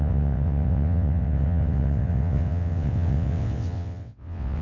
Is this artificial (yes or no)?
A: yes